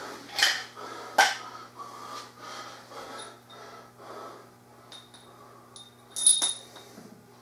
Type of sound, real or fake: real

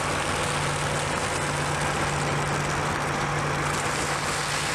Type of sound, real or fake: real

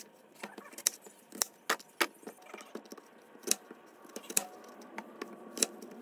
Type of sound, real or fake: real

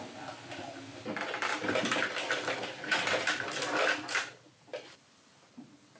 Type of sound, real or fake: fake